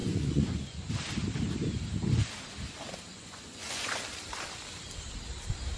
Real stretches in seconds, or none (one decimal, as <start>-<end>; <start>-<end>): 0.9-3.1; 4.0-5.8